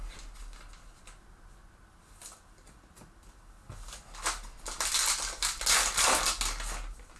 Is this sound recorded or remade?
recorded